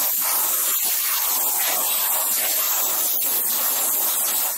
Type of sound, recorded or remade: recorded